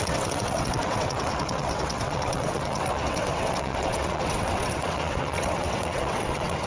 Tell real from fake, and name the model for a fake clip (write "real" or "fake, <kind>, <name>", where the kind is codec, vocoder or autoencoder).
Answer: fake, vocoder, WaveNeXt